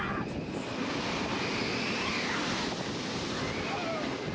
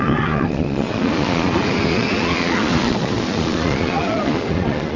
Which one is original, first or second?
first